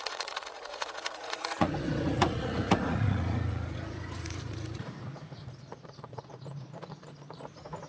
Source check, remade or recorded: remade